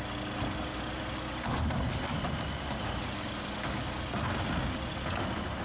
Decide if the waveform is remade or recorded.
recorded